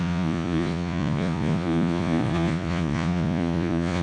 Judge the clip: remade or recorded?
remade